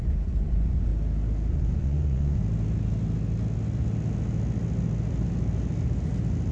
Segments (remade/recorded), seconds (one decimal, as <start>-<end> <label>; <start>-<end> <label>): 0.0-0.9 remade; 0.9-1.5 recorded; 1.5-2.4 remade; 2.4-6.5 recorded